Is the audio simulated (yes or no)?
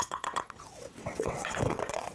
yes